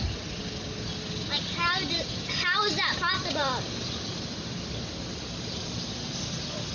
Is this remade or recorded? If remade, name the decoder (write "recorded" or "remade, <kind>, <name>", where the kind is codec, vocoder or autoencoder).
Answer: recorded